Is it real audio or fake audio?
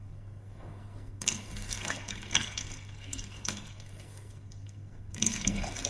fake